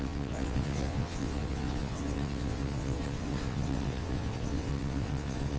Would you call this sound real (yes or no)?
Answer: no